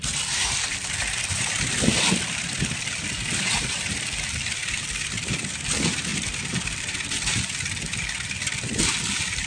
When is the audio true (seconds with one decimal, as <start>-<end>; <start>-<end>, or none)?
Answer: 0.0-9.5

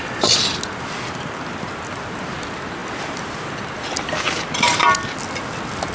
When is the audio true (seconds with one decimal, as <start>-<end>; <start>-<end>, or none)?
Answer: 0.0-5.9

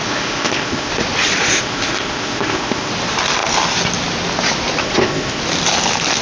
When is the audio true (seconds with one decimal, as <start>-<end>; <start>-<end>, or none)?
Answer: 0.9-1.5; 2.9-4.8; 5.4-6.2

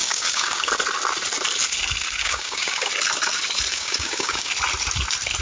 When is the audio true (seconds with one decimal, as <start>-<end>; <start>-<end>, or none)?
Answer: 0.7-2.2; 2.9-3.7; 4.5-5.4

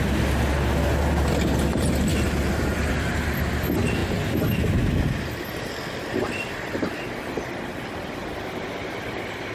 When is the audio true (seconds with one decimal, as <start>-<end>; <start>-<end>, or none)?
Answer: 0.0-9.5

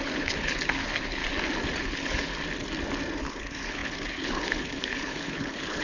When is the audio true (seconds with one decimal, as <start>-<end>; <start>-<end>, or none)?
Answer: 1.2-1.8; 2.3-3.2

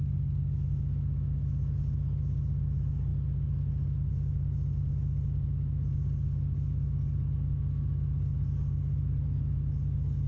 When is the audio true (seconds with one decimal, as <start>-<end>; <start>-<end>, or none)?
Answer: 0.0-10.3

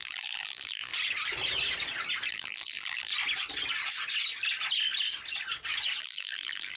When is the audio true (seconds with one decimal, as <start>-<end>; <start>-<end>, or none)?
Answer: 0.9-2.3; 3.1-6.0